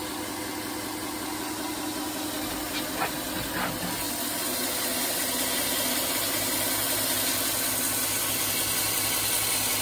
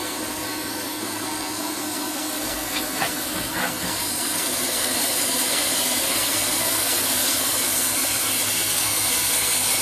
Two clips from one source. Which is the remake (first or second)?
second